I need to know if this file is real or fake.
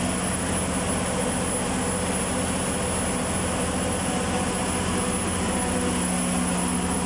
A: real